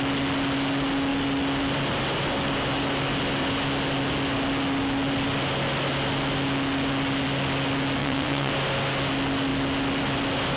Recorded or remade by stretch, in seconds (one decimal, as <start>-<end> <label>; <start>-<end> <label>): 0.0-8.0 recorded; 8.0-8.5 remade; 8.5-10.6 recorded